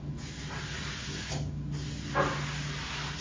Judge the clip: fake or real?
real